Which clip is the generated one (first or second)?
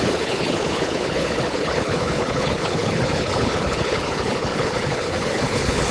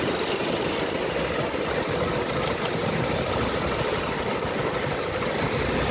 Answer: first